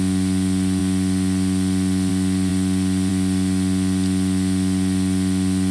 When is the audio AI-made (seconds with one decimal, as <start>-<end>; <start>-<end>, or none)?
none